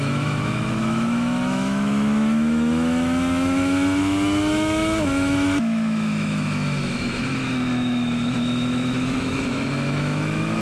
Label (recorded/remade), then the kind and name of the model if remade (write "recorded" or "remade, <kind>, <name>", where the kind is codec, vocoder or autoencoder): remade, autoencoder, DAC-VAE